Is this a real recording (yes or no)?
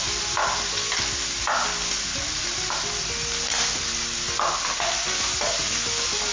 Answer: yes